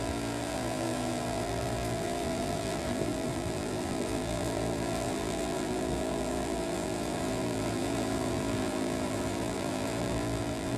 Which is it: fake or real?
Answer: fake